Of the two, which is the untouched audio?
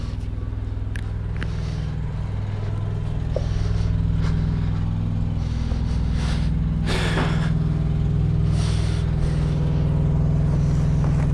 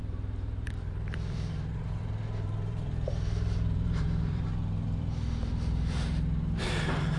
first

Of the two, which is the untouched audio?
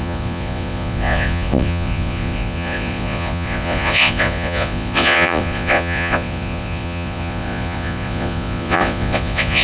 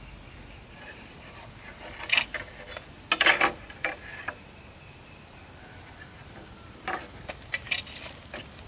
second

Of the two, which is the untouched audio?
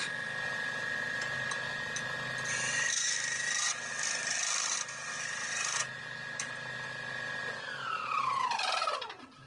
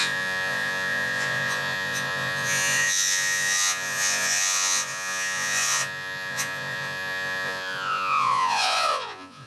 first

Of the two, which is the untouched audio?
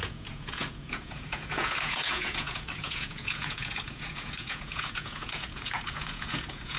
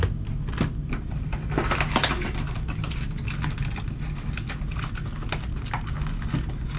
second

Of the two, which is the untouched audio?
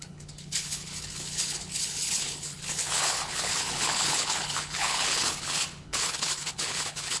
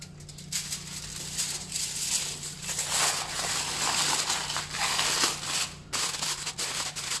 second